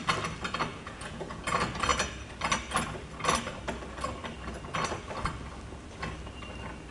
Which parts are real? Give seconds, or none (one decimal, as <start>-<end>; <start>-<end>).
0.0-0.7; 1.4-6.9

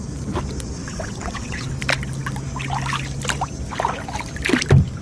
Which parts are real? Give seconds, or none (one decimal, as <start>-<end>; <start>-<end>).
0.0-0.8; 1.7-5.0

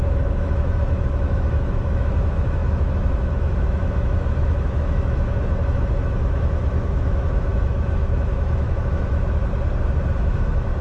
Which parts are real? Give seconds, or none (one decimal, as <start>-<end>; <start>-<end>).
9.4-10.2